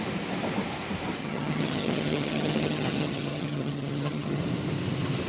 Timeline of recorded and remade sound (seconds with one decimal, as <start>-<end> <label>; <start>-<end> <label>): 0.0-1.2 recorded; 1.2-4.4 remade; 4.4-5.3 recorded